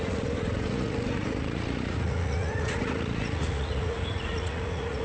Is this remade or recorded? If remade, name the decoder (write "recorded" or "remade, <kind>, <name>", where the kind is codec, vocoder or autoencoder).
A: remade, vocoder, Vocos